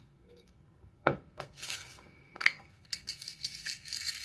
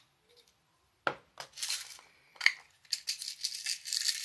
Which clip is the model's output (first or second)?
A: first